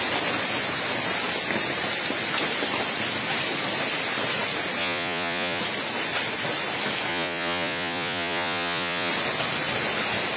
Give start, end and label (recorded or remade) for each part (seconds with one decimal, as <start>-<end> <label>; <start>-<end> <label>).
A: 0.0-4.8 recorded; 4.8-5.6 remade; 5.6-7.1 recorded; 7.1-9.1 remade; 9.1-10.4 recorded